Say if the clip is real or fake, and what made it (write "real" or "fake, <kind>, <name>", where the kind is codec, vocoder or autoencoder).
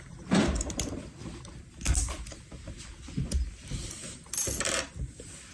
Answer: real